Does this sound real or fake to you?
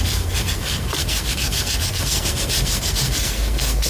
fake